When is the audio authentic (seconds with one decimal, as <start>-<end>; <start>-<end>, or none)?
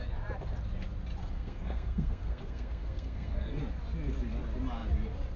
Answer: 0.0-1.2; 3.6-5.4